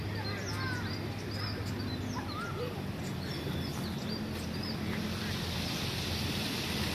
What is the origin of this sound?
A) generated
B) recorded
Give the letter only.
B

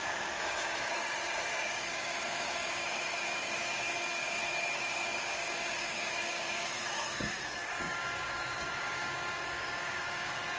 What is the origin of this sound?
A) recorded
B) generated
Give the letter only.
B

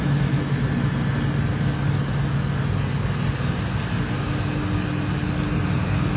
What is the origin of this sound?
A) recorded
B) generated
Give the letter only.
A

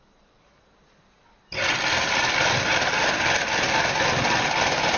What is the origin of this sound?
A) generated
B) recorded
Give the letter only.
B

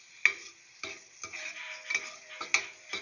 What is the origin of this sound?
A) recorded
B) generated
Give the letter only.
A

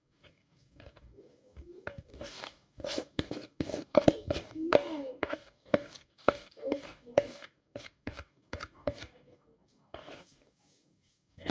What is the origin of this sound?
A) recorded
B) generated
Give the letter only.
B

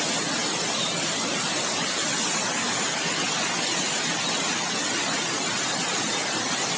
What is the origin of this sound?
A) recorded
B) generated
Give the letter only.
A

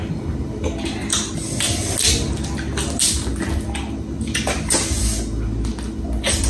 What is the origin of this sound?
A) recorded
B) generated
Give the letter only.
A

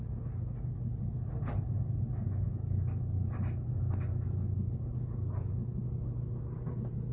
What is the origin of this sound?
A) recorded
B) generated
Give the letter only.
A